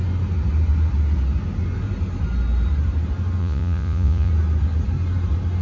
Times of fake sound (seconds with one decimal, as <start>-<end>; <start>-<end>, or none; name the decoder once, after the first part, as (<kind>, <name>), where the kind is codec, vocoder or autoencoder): 3.4-4.3 (vocoder, Vocos)